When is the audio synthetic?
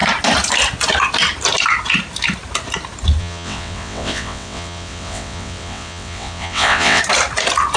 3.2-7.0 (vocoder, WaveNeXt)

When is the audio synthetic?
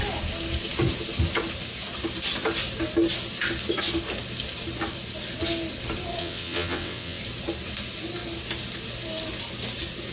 6.2-7.2 (vocoder, WaveNeXt)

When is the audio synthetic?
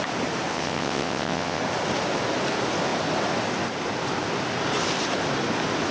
0.5-1.6 (vocoder, WaveNeXt)